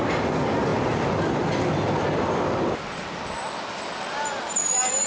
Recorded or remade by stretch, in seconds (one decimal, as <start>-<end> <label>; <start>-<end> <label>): 0.0-5.1 recorded